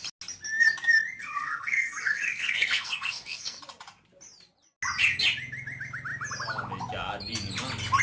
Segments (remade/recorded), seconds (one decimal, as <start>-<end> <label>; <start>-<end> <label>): 0.0-1.2 recorded; 1.2-3.6 remade; 3.6-8.0 recorded